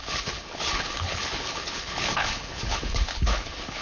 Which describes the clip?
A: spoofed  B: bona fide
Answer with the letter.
A